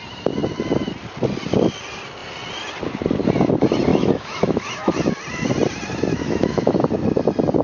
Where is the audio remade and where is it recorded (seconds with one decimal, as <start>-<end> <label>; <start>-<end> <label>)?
0.0-3.9 recorded; 3.9-5.1 remade; 5.1-6.1 recorded; 6.1-6.7 remade; 6.7-7.6 recorded